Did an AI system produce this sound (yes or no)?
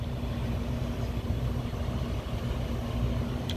no